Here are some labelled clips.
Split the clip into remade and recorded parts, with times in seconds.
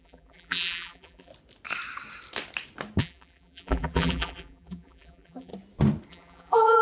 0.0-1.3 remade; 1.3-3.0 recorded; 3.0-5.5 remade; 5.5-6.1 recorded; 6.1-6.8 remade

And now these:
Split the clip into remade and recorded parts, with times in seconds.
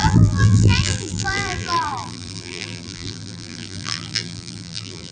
0.0-5.1 remade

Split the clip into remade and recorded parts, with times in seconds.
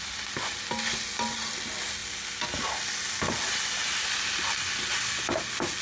0.0-5.8 recorded